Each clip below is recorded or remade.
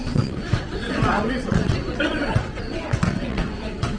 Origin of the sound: remade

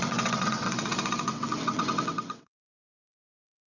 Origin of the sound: remade